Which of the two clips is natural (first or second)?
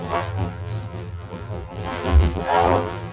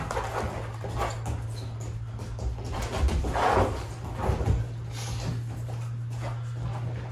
second